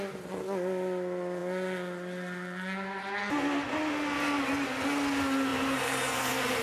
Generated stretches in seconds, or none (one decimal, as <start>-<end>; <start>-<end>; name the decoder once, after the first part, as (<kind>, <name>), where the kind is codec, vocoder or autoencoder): 5.5-6.6 (vocoder, BigVGAN v2)